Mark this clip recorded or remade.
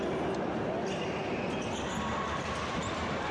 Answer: recorded